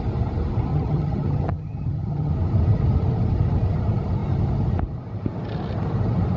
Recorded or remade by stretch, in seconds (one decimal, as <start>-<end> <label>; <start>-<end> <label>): 0.0-0.7 recorded; 0.7-2.3 remade; 2.3-6.4 recorded